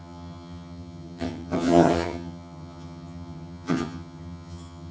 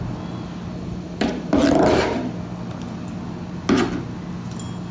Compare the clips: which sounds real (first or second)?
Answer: second